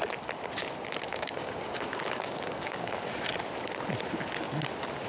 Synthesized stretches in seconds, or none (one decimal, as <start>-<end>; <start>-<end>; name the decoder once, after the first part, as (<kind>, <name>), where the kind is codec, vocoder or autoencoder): 1.1-3.1 (codec, DAC)